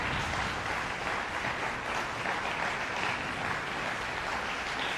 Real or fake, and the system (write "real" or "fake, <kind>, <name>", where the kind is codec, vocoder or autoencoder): real